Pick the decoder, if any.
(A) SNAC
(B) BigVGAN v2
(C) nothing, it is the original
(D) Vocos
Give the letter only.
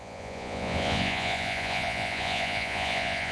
D